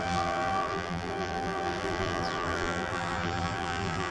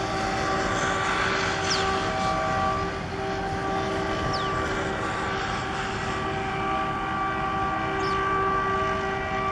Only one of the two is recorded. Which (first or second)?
second